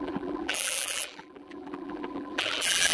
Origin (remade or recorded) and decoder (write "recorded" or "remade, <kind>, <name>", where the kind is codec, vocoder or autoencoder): remade, vocoder, BigVGAN v2